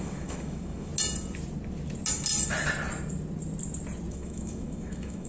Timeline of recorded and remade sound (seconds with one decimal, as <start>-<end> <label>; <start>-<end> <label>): 0.0-0.9 remade; 0.9-4.1 recorded; 4.1-5.3 remade